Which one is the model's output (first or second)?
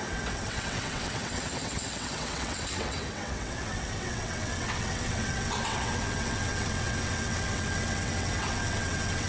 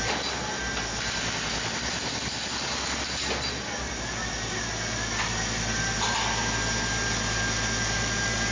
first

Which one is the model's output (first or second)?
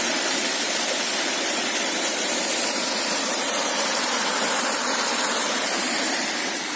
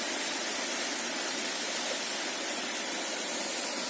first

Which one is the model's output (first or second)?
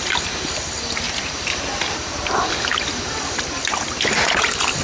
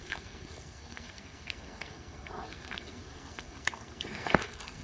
second